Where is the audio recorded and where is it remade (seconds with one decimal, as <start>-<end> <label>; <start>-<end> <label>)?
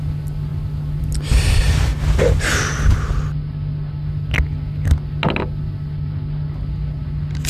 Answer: 0.0-7.5 recorded